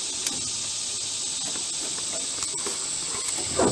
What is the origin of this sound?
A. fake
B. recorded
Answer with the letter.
B